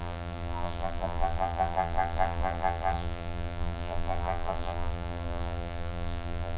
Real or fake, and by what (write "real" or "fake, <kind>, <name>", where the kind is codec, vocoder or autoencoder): fake, vocoder, BigVGAN v2